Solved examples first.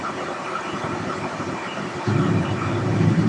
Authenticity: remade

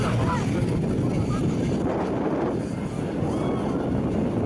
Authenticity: recorded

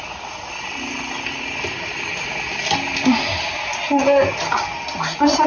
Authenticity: recorded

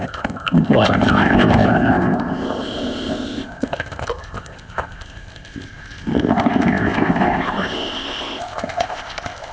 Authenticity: remade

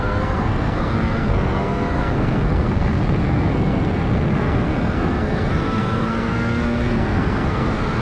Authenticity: remade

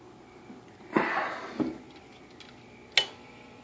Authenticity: recorded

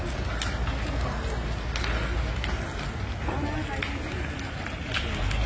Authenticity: recorded